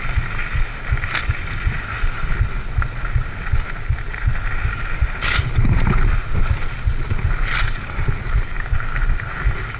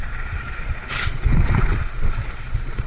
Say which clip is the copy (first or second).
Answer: second